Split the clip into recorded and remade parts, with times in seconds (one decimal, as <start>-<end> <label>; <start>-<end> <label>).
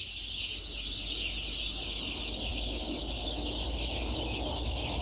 0.0-5.0 recorded